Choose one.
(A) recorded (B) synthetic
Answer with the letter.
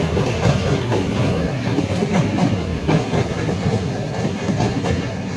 B